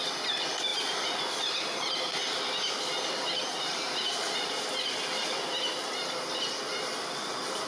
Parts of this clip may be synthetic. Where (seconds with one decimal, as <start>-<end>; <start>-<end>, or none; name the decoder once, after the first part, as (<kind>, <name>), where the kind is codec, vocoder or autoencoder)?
4.1-4.8 (vocoder, BigVGAN v2)